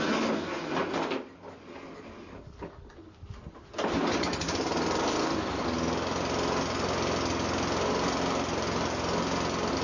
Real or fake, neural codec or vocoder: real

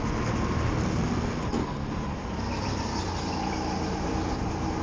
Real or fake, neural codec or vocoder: real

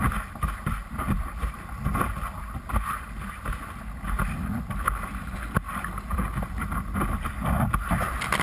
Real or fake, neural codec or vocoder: real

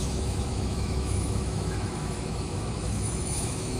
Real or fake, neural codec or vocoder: fake, autoencoder, DAC-VAE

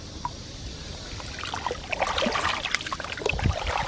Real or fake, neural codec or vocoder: fake, vocoder, BigVGAN v2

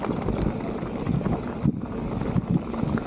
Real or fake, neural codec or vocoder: real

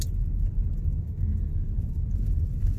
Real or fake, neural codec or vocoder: real